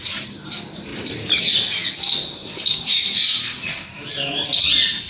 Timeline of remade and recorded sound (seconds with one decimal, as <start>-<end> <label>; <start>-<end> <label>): 0.0-1.8 remade; 1.8-5.1 recorded